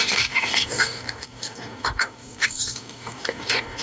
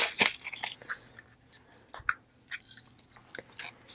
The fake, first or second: first